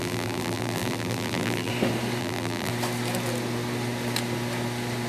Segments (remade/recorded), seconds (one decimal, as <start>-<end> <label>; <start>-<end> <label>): 0.0-1.7 remade; 1.7-2.2 recorded; 2.2-2.7 remade; 2.7-5.1 recorded